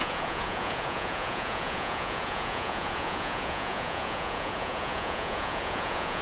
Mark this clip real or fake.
fake